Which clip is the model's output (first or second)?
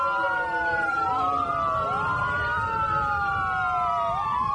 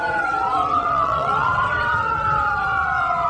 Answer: second